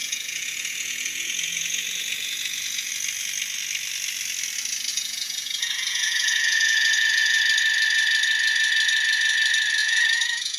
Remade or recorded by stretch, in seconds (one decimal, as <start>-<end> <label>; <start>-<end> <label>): 0.0-2.9 remade; 2.9-4.9 recorded; 4.9-7.4 remade; 7.4-9.8 recorded; 9.8-10.6 remade